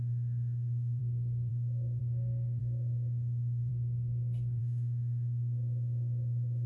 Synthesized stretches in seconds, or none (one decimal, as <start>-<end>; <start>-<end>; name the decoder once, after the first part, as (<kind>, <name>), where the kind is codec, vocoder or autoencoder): 0.0-1.0 (autoencoder, DAC-VAE); 1.5-2.0; 2.6-3.7; 4.6-6.7